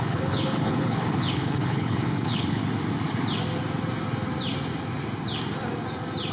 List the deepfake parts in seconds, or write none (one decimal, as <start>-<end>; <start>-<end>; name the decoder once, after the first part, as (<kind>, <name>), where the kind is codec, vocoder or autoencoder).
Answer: 0.0-2.6 (codec, HILCodec)